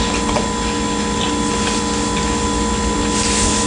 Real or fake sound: real